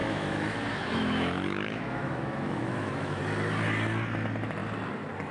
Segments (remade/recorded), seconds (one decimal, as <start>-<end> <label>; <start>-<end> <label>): 0.0-3.2 remade; 3.2-5.3 recorded